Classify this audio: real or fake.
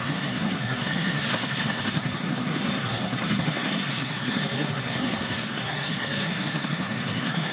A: fake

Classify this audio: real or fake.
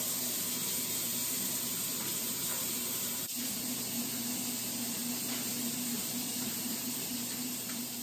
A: fake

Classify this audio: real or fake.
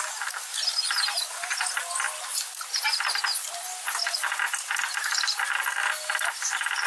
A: real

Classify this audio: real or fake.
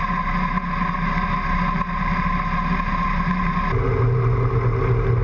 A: real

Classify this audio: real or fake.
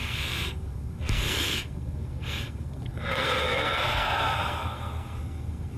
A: fake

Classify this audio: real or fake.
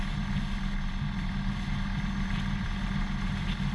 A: real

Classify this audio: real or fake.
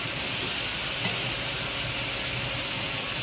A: real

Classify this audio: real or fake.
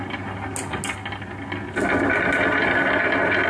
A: real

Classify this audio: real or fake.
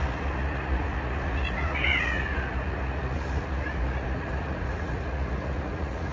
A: fake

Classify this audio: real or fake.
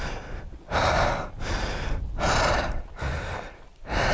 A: real